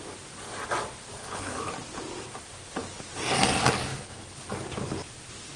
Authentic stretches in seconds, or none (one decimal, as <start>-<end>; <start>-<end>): 0.0-1.2; 1.7-3.9; 4.5-5.6